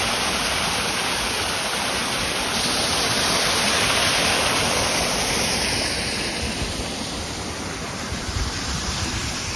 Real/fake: real